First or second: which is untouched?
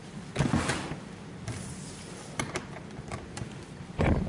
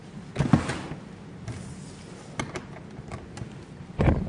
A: second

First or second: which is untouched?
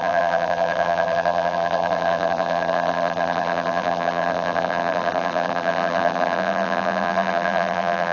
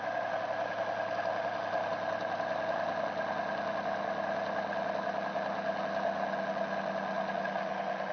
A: second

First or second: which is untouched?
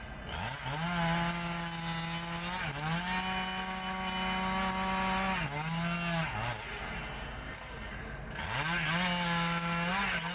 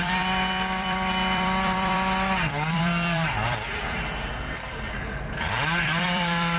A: first